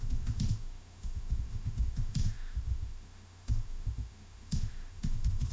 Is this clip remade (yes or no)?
yes